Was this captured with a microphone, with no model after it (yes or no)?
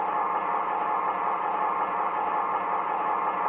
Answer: yes